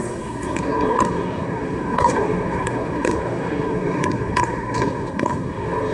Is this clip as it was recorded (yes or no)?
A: no